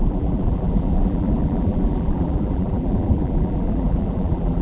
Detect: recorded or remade remade